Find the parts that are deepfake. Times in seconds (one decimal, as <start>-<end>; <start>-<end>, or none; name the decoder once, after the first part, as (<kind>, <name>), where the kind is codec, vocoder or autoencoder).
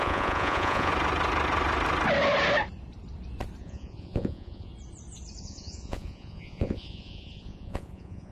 0.0-0.9 (vocoder, Vocos); 3.6-4.7; 5.4-8.3